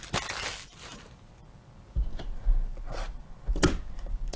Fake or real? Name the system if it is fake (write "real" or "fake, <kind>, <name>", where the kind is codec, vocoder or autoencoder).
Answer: real